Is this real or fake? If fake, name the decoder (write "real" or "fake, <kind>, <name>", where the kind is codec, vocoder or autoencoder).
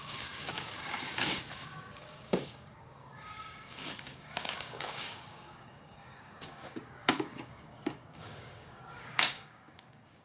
fake, codec, DAC